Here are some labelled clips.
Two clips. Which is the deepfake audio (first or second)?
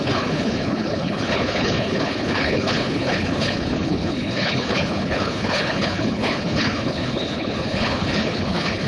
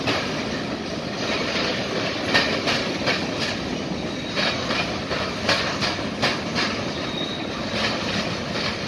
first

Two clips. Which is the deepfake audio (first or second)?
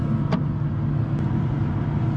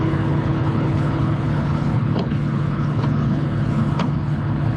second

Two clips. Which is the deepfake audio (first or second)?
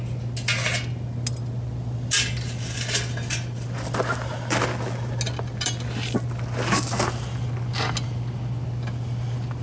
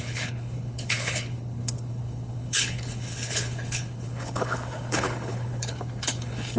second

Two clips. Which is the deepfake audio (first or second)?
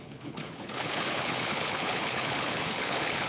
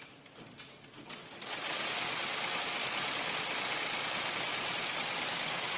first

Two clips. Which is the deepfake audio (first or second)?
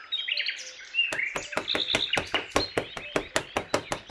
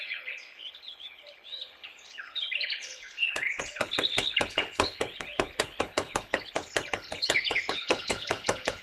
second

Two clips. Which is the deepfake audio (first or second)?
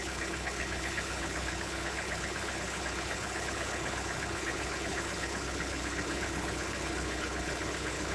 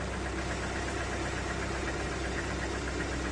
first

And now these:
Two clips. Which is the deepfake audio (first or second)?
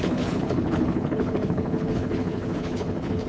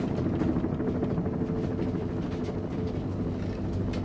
first